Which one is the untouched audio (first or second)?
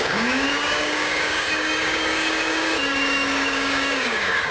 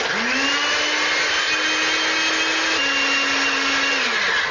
second